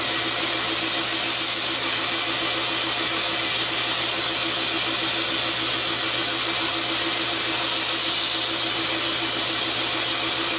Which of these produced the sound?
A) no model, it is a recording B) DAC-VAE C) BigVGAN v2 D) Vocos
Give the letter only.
A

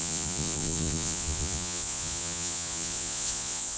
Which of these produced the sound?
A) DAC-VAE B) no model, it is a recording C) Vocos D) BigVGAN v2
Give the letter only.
C